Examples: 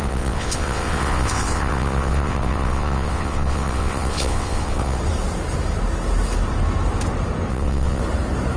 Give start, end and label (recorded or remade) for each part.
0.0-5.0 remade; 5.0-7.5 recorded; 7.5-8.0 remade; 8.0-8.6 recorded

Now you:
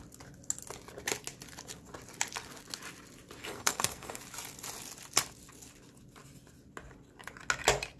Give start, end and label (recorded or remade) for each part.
0.0-3.4 recorded; 3.4-4.2 remade; 4.2-8.0 recorded

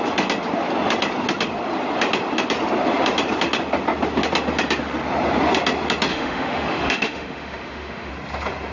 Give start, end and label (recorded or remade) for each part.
0.0-6.1 recorded; 6.1-8.1 remade; 8.1-8.7 recorded

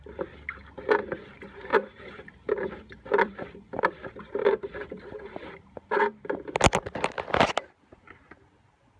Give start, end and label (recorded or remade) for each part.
0.0-1.7 recorded; 1.7-5.5 remade; 5.5-9.0 recorded

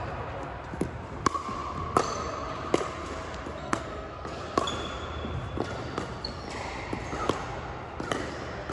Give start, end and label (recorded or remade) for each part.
0.0-3.6 recorded; 3.6-4.4 remade; 4.4-8.7 recorded